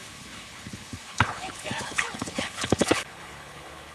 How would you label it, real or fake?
fake